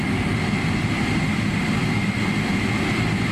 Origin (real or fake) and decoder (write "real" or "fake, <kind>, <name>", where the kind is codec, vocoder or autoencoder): real